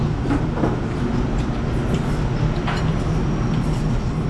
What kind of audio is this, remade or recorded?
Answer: recorded